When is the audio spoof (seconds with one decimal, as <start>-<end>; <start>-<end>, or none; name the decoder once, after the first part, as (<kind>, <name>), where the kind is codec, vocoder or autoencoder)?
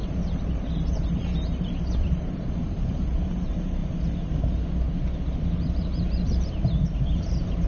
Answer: 0.0-3.8 (vocoder, BigVGAN v2); 5.7-7.7